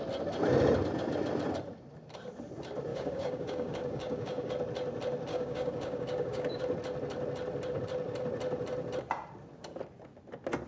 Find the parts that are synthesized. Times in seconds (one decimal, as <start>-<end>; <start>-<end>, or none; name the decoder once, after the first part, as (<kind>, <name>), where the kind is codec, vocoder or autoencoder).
2.9-4.5 (codec, DAC); 5.3-6.6